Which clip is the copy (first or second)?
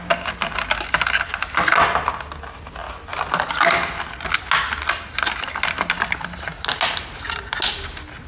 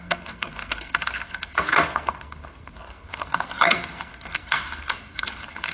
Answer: second